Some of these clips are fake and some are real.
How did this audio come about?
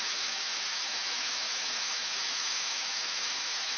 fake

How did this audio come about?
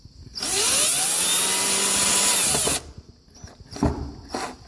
real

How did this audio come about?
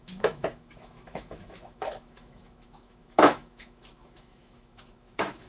fake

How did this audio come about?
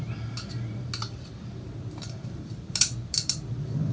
real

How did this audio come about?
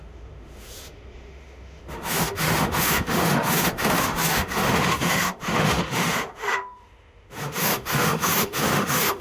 fake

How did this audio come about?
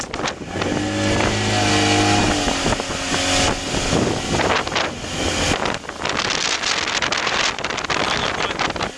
real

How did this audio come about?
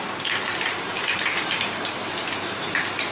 real